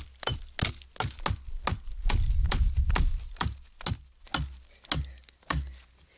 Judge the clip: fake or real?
real